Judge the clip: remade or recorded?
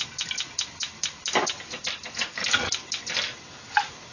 recorded